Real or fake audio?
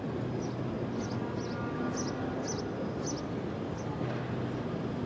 real